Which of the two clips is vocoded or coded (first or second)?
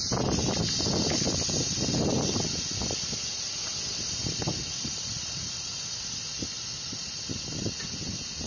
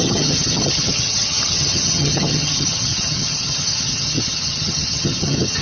second